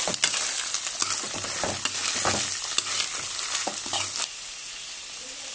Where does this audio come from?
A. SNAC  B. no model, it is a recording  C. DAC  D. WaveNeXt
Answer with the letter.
B